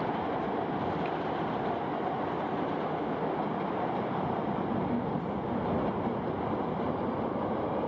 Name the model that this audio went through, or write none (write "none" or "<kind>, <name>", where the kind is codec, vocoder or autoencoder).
none